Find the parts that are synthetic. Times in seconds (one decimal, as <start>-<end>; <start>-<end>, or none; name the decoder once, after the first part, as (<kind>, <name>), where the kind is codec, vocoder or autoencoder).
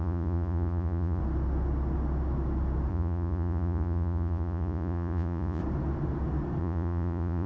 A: 0.0-1.2 (vocoder, Vocos); 2.9-5.6; 6.6-7.5